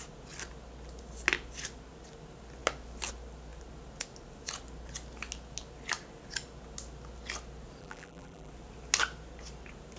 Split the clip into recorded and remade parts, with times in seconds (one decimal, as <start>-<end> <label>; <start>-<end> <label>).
0.0-7.8 recorded; 7.8-8.5 remade; 8.5-10.0 recorded